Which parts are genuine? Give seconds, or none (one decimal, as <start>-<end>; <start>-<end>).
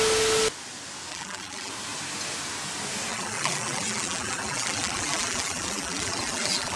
0.0-1.1; 1.7-3.1